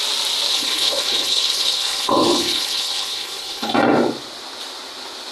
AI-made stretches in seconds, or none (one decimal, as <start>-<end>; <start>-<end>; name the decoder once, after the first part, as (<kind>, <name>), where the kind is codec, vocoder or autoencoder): 0.5-3.7 (codec, HILCodec)